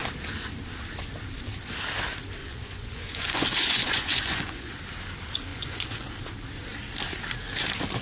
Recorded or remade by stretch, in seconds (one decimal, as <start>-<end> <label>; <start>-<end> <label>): 0.0-2.4 recorded; 2.4-4.7 remade; 4.7-5.5 recorded; 5.5-6.1 remade; 6.1-8.0 recorded